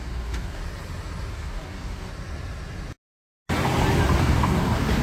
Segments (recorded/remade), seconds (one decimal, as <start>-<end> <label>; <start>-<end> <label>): 0.0-0.6 remade; 0.6-1.3 recorded; 1.3-2.1 remade; 2.1-4.2 recorded; 4.2-5.0 remade